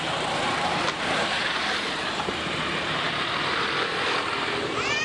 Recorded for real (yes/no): no